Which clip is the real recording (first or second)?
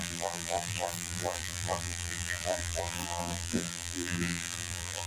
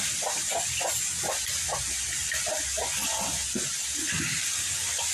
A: second